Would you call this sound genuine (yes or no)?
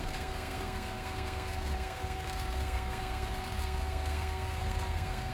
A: no